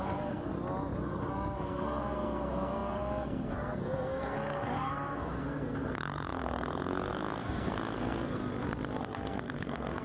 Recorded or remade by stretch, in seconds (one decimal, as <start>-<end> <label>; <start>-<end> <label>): 0.0-0.5 remade; 0.5-1.0 recorded; 1.0-8.4 remade; 8.4-9.0 recorded; 9.0-10.0 remade